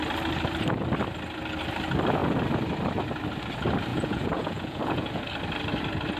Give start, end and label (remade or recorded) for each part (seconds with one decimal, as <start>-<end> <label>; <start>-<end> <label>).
0.0-3.9 recorded; 3.9-5.2 remade; 5.2-6.2 recorded